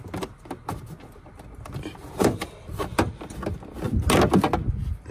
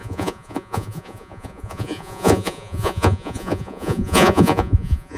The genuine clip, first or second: first